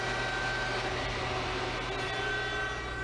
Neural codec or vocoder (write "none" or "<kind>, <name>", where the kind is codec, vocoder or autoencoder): none